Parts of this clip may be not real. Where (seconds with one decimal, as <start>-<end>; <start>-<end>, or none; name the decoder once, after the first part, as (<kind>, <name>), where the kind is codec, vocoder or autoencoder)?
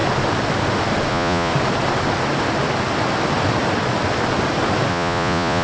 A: 1.1-1.5 (vocoder, Vocos); 4.9-5.6